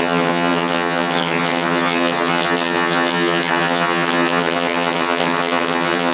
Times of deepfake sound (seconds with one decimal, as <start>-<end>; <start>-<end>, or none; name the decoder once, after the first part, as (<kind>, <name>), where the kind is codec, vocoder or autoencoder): 0.0-6.1 (vocoder, HiFi-GAN)